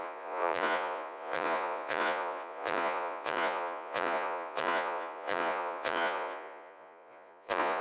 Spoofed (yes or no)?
yes